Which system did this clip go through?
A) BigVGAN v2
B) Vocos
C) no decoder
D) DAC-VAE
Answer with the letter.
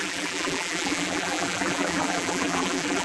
A